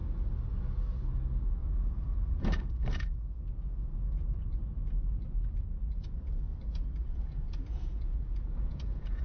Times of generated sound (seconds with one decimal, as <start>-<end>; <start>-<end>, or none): 1.6-4.1; 7.0-9.2